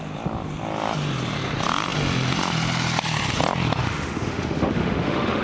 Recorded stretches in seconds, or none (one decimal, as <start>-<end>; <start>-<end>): 0.0-3.8